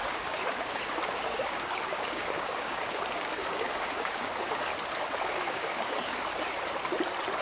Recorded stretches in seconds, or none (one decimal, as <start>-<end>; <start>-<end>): 4.7-5.2; 6.3-7.4